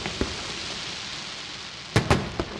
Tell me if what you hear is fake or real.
real